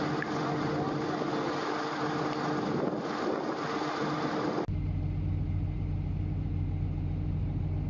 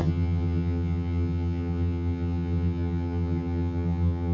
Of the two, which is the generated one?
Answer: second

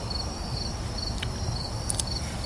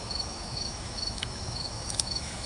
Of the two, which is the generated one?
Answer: second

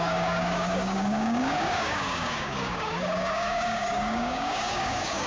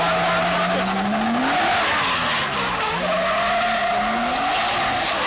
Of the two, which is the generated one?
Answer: first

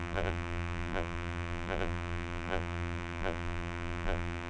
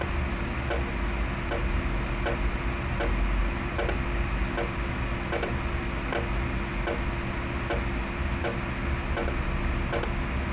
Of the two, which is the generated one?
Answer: first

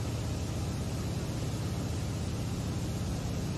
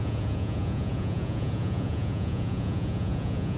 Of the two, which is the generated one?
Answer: second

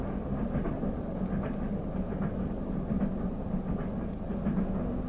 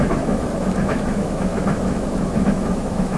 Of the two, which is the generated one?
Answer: second